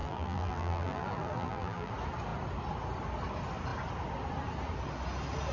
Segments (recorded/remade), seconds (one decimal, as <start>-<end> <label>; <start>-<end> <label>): 0.0-1.9 remade; 1.9-5.5 recorded